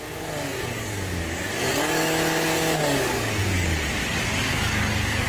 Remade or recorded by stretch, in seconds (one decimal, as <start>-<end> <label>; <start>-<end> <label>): 0.0-5.3 remade